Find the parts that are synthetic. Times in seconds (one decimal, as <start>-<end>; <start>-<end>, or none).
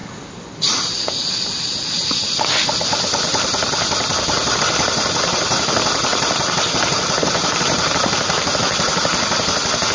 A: 6.1-8.6